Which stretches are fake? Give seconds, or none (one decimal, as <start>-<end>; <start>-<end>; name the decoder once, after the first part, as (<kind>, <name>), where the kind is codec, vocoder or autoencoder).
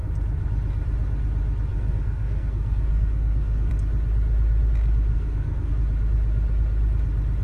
1.7-3.7 (codec, SNAC); 5.1-5.7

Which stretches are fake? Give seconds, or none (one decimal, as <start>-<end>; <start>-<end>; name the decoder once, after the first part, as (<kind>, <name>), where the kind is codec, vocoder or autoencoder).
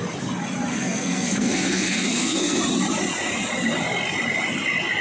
0.7-2.6 (codec, SNAC)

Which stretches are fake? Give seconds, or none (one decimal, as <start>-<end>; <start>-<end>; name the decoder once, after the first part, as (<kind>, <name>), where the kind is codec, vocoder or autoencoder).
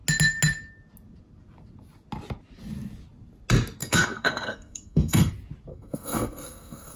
3.8-5.3 (codec, SNAC); 5.7-7.0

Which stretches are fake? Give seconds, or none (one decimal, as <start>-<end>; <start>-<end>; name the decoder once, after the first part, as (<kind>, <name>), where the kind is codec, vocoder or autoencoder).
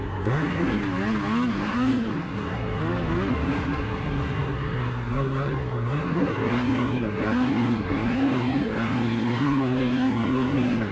0.0-0.8 (codec, SNAC); 1.5-2.8; 3.3-10.9